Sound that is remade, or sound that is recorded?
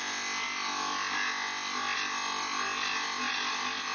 recorded